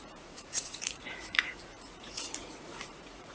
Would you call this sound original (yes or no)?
no